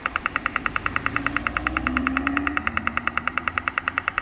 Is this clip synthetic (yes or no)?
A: yes